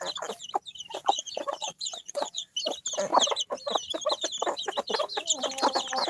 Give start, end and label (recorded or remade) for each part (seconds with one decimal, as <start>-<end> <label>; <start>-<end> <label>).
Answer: 0.0-1.0 recorded; 1.0-2.5 remade; 2.5-6.1 recorded